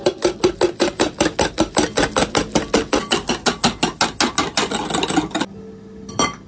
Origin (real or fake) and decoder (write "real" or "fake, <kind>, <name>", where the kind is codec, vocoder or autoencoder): real